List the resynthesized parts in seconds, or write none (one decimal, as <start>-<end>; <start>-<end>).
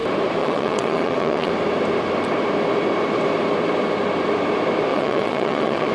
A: 0.4-1.5; 4.9-5.9